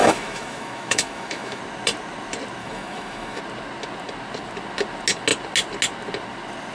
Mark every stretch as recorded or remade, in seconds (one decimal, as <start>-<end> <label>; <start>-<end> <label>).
0.0-1.6 remade; 1.6-2.6 recorded; 2.6-3.4 remade; 3.4-6.7 recorded